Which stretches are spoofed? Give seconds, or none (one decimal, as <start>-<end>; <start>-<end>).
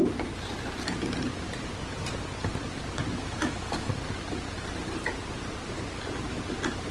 3.2-3.9